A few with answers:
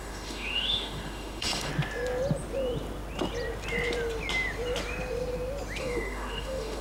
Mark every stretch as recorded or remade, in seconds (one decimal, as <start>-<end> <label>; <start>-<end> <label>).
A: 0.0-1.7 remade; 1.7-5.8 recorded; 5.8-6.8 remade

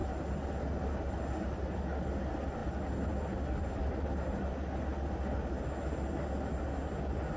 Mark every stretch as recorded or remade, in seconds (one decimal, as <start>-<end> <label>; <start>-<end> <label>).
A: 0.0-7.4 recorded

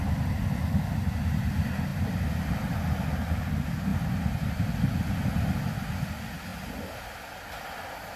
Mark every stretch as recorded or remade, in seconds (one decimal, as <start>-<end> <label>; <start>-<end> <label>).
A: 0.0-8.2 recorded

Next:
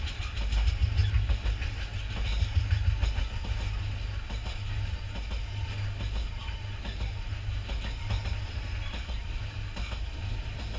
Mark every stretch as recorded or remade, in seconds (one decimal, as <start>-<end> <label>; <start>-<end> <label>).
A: 0.0-10.8 recorded

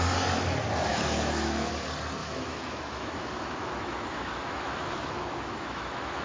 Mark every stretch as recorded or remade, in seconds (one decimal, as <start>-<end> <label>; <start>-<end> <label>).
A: 0.0-0.9 recorded; 0.9-1.7 remade; 1.7-2.2 recorded; 2.2-6.2 remade

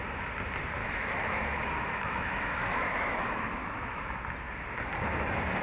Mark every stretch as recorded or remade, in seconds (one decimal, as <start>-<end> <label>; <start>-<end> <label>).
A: 0.0-0.8 recorded; 0.8-4.2 remade; 4.2-5.6 recorded

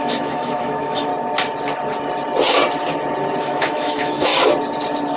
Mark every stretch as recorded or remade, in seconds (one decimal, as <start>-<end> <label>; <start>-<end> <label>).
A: 0.0-1.1 remade; 1.1-3.4 recorded; 3.4-4.3 remade; 4.3-5.2 recorded

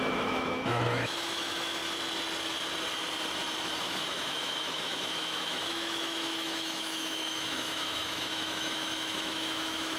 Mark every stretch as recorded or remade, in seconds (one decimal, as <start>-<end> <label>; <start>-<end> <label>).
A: 0.0-1.8 remade; 1.8-3.8 recorded; 3.8-10.0 remade